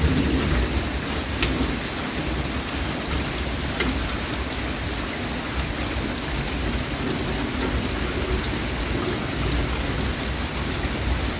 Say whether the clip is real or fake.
real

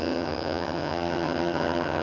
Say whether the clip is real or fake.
fake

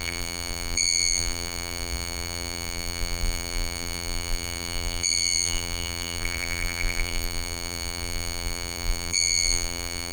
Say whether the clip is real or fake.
fake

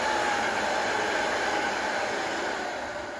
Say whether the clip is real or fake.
real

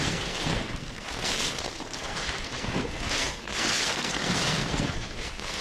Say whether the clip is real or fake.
fake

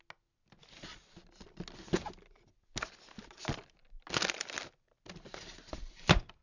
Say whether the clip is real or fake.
real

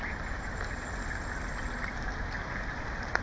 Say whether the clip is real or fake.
real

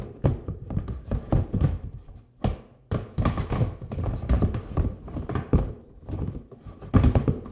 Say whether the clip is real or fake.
fake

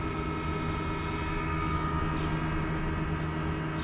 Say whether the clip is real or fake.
real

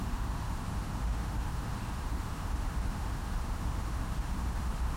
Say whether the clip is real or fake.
fake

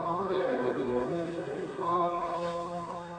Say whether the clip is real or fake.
fake